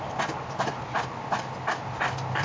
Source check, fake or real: real